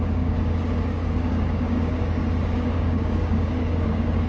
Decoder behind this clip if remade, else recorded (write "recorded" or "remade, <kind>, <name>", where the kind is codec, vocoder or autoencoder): remade, codec, DAC